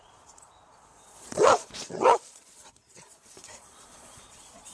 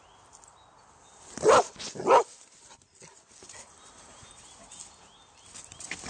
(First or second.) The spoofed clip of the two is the first